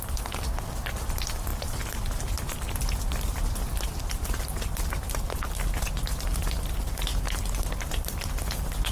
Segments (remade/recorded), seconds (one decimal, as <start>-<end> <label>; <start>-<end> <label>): 0.0-1.5 remade; 1.5-3.6 recorded; 3.6-7.1 remade; 7.1-7.9 recorded; 7.9-8.9 remade